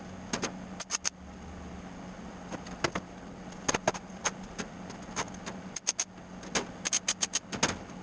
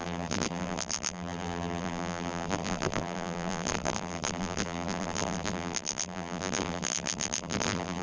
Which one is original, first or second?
first